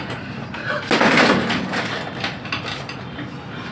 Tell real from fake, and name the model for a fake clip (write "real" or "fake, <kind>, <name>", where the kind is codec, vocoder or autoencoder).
real